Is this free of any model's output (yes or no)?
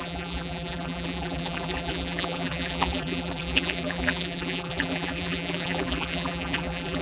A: no